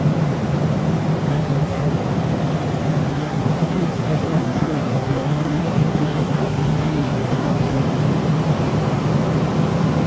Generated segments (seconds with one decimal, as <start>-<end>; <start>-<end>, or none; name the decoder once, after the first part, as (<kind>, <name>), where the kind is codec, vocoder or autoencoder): 1.3-1.9 (codec, SNAC); 3.1-7.8